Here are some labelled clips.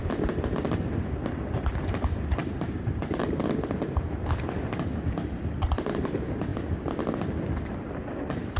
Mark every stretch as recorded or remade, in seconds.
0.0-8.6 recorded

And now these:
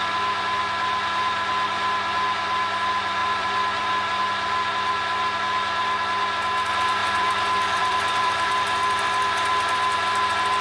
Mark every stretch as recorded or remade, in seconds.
0.0-3.2 recorded; 3.2-4.2 remade; 4.2-7.0 recorded; 7.0-8.5 remade; 8.5-10.6 recorded